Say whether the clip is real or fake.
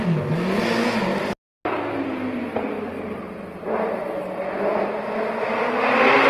real